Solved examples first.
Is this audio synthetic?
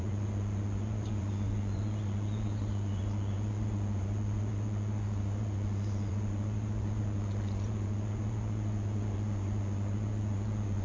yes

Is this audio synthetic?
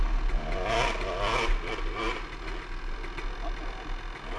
no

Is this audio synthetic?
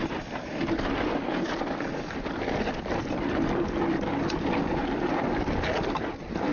no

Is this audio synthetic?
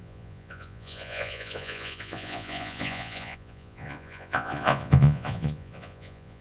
yes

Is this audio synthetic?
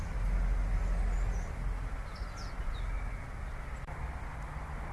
no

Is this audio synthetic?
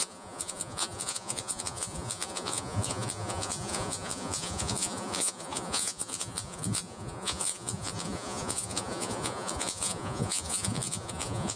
yes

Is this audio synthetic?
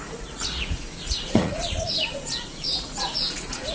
yes